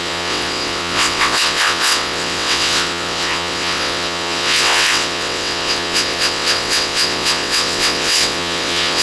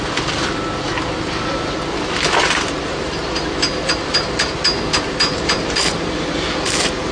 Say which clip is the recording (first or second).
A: second